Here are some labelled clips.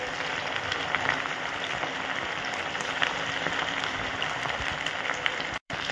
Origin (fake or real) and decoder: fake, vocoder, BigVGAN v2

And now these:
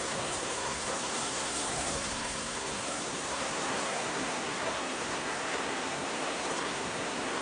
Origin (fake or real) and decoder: fake, codec, SNAC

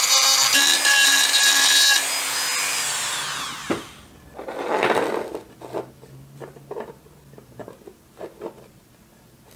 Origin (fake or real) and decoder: real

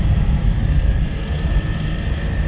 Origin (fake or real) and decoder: real